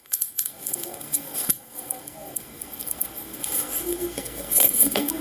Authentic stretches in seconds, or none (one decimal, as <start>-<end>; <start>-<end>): none